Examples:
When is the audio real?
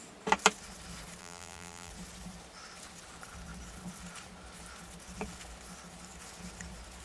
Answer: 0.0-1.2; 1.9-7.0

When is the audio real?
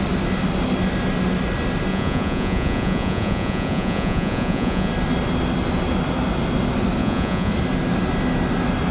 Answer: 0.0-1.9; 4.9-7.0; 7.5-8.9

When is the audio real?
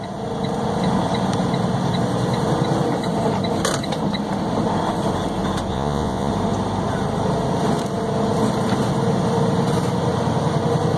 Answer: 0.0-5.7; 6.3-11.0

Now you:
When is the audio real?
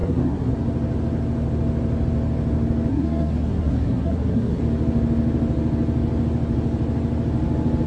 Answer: 0.5-2.9; 4.6-7.9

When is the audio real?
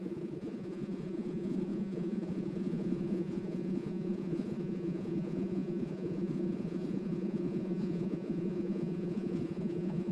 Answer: none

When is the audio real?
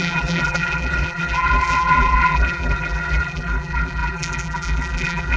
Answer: none